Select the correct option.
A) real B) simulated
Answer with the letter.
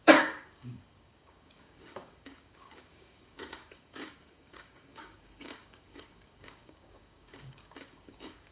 B